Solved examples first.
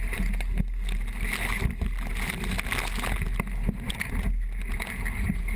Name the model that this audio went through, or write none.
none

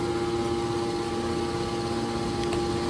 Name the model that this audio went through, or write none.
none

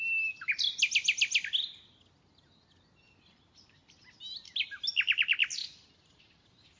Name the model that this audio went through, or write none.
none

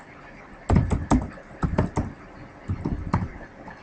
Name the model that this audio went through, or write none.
none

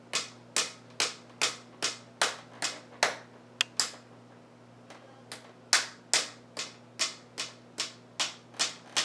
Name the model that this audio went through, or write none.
none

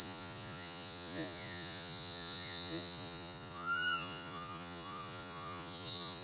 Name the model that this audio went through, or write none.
vocoder, Vocos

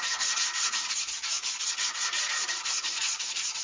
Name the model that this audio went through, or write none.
vocoder, Vocos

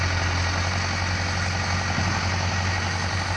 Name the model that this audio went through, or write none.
none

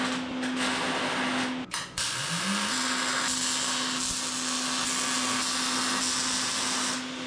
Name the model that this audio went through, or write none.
none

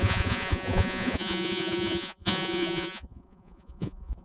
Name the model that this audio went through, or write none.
vocoder, Vocos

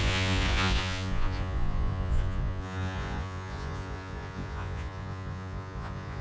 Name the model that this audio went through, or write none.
vocoder, Vocos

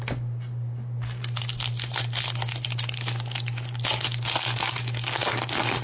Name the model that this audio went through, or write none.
none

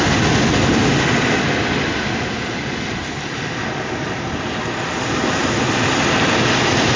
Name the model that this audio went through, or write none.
none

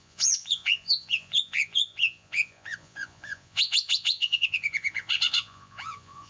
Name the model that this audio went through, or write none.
vocoder, Vocos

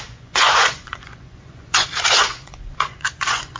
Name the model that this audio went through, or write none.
vocoder, Vocos